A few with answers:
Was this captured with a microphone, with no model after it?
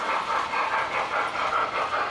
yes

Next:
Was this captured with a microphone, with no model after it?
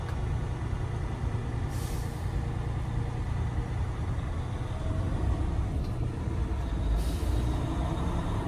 yes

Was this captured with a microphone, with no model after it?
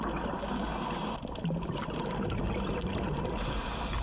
yes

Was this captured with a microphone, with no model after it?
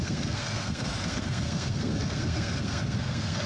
no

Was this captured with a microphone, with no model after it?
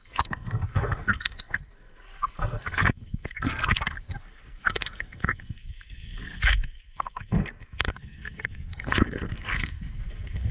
no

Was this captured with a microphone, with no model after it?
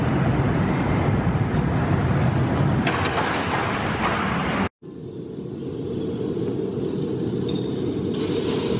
yes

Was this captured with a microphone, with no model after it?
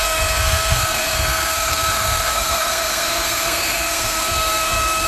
no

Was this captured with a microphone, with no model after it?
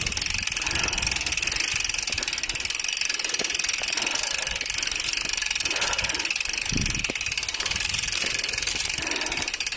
yes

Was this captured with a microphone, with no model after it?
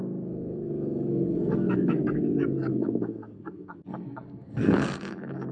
no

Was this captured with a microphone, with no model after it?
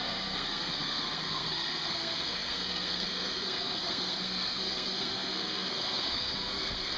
no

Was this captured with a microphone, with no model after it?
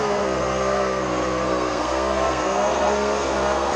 no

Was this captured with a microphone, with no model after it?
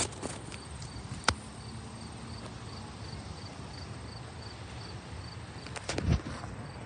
yes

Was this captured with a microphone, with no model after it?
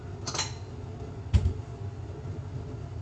yes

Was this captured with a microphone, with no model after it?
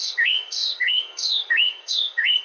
no